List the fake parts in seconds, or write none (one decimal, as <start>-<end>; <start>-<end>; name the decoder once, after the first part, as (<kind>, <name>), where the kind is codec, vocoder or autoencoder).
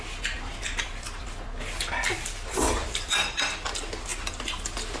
0.5-3.5 (vocoder, BigVGAN v2)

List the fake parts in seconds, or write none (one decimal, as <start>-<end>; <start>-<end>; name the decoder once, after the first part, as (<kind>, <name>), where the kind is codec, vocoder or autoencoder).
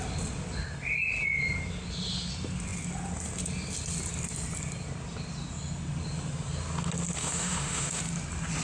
7.2-8.0 (autoencoder, DAC-VAE)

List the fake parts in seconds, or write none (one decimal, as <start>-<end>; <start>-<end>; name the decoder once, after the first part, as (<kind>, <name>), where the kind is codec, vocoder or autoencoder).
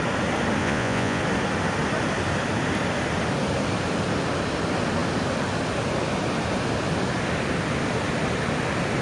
0.6-1.2 (vocoder, Vocos)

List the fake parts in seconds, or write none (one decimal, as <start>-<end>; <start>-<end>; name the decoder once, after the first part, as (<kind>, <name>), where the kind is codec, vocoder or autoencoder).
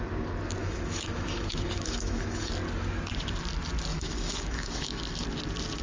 0.6-2.5 (autoencoder, DAC-VAE); 3.9-5.0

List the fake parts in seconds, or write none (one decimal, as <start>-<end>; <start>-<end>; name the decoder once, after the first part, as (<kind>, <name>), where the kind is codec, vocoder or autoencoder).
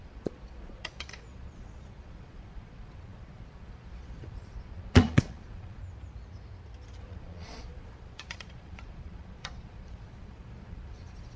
0.0-5.8 (vocoder, Vocos); 7.0-11.4